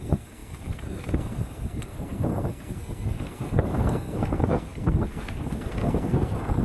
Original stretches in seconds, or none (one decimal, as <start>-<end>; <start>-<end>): none